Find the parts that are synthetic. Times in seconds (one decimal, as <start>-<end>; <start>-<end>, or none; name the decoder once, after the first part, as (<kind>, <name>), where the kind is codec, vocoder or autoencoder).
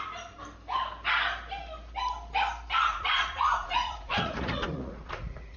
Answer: 2.9-5.6 (vocoder, Vocos)